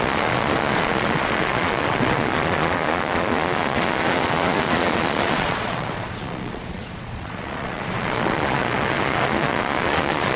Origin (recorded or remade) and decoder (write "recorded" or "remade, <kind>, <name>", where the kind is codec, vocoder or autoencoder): remade, vocoder, Vocos